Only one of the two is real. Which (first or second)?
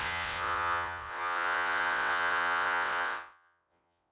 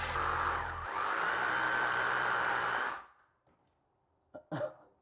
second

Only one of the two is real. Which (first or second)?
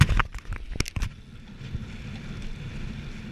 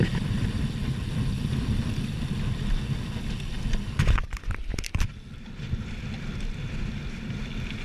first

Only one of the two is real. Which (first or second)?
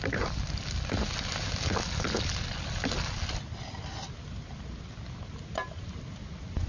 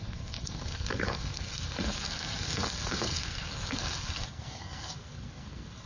first